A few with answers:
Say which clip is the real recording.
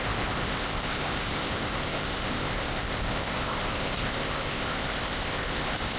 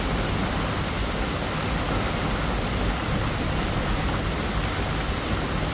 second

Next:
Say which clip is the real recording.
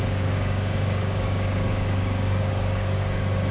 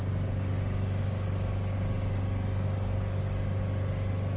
second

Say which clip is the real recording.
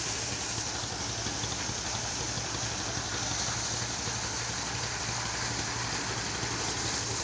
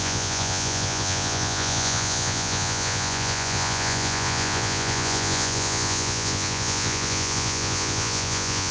first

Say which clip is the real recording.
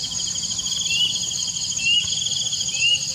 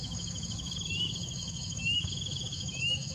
first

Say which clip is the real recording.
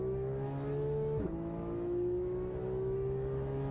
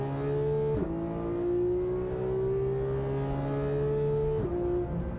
second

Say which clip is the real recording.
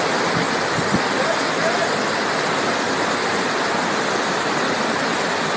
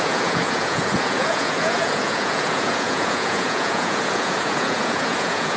first